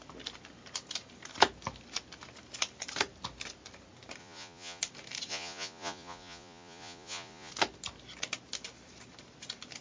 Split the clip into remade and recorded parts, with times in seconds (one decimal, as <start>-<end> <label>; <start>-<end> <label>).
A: 0.0-4.2 recorded; 4.2-4.8 remade; 4.8-5.3 recorded; 5.3-7.5 remade; 7.5-9.8 recorded